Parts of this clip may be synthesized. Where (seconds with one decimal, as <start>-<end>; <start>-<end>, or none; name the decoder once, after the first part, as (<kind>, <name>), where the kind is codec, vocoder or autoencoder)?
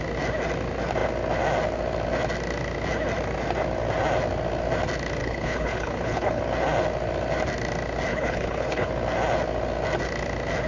5.2-6.4 (codec, HILCodec); 8.1-8.9